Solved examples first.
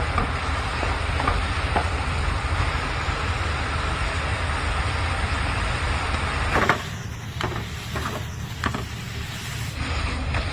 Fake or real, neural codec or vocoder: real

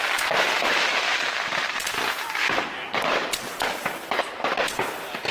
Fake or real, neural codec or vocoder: fake, vocoder, BigVGAN v2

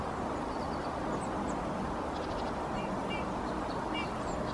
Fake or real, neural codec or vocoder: real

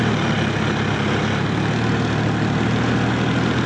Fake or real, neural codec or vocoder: real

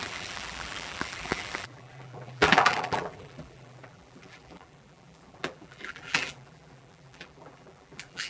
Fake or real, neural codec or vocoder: fake, vocoder, BigVGAN v2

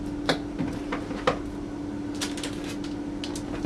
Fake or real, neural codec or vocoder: real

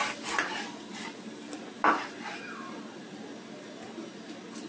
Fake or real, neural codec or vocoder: real